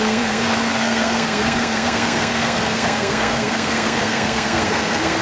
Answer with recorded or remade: remade